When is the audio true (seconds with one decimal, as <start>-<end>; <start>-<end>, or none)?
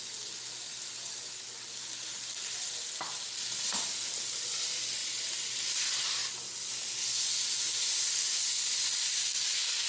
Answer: 0.0-0.7; 4.1-5.0; 5.5-9.9